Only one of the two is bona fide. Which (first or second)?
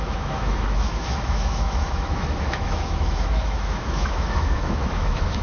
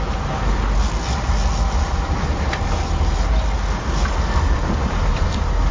second